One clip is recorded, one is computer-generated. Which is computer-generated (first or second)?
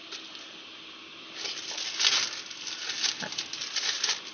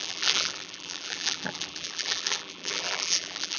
second